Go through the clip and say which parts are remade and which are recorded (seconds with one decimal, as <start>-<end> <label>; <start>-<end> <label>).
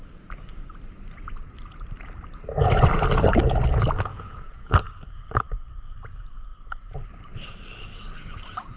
0.0-4.1 recorded; 4.1-4.8 remade; 4.8-8.8 recorded